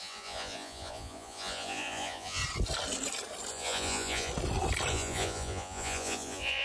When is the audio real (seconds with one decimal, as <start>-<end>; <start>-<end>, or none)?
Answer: 2.4-3.5; 4.3-4.9